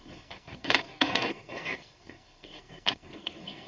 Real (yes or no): no